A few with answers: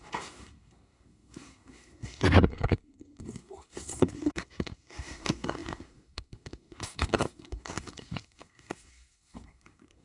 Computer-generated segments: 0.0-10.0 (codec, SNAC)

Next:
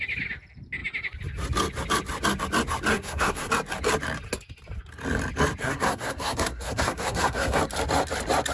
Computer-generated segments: 2.9-3.5 (codec, SNAC); 5.6-7.6

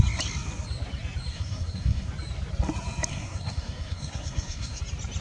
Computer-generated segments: 1.3-2.1 (codec, SNAC); 3.1-4.8

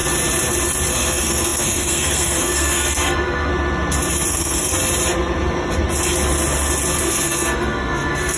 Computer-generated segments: 0.9-3.5 (codec, SNAC); 4.3-4.7; 7.0-8.4

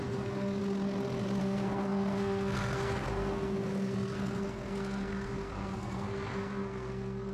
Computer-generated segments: 0.0-0.6 (codec, SNAC); 1.4-7.3